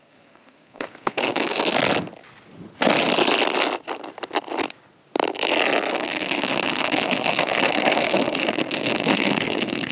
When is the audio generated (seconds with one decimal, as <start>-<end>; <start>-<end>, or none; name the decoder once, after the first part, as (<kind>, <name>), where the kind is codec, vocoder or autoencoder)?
0.0-1.6 (codec, SNAC); 5.9-9.9